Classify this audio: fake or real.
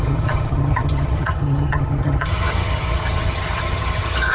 fake